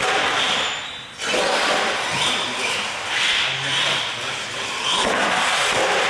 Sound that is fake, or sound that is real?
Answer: real